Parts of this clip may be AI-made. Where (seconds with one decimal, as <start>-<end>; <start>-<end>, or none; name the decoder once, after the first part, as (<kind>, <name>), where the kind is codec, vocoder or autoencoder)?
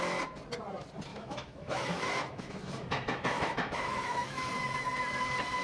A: 1.1-4.5 (autoencoder, DAC-VAE)